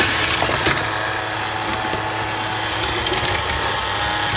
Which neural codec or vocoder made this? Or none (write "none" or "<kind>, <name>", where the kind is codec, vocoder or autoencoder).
none